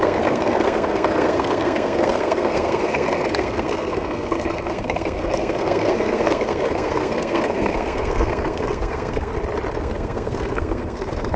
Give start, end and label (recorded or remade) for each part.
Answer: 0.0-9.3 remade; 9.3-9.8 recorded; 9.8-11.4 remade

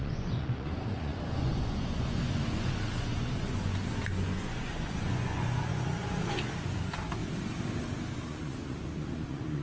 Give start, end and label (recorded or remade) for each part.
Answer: 0.0-7.2 remade; 7.2-8.1 recorded; 8.1-9.6 remade